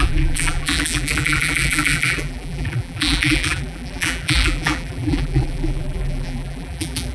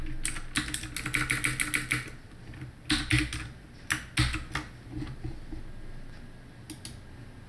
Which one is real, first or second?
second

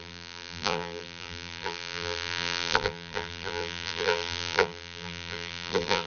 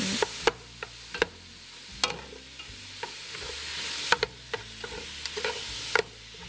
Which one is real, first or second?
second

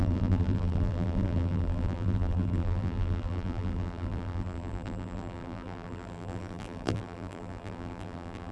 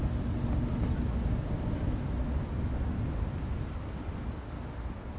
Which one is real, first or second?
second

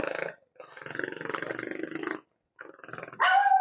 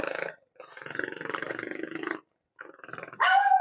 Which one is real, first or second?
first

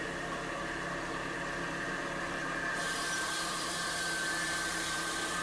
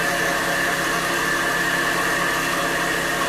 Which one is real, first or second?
second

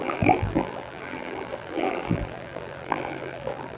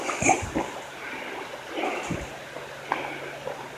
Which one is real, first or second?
second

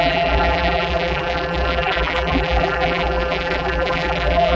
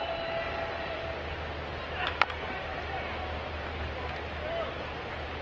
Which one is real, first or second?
second